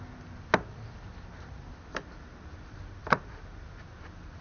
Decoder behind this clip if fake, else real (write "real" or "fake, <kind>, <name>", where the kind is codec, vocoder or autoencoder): real